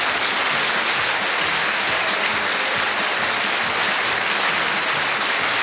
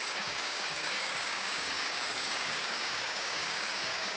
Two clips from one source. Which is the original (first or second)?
first